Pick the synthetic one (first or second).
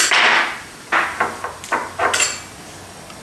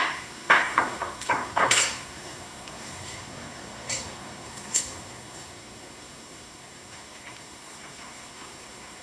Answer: second